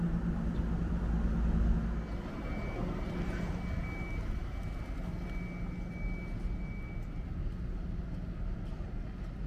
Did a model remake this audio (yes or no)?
no